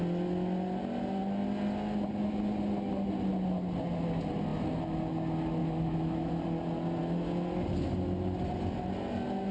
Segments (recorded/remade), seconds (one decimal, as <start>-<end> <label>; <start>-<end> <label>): 0.0-5.6 recorded; 5.6-6.3 remade; 6.3-9.5 recorded